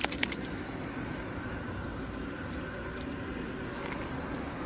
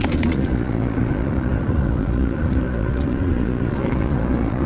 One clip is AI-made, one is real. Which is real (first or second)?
first